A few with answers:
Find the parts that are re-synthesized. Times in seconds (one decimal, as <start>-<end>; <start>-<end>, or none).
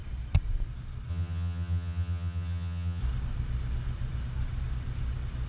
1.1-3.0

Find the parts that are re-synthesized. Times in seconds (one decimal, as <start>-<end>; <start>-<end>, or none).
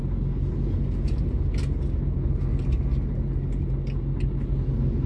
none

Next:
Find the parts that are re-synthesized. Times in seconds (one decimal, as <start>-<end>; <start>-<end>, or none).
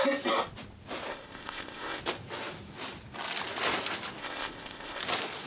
1.1-2.0; 4.2-5.0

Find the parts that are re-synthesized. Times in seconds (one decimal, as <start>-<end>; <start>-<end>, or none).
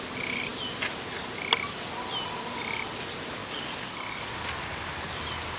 3.4-3.9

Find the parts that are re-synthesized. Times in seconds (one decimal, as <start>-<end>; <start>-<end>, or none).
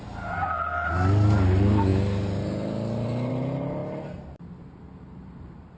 none